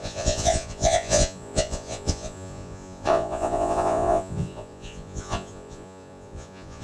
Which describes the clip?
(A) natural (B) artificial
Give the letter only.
B